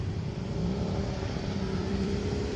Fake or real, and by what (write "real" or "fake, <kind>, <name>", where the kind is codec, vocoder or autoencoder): fake, vocoder, BigVGAN v2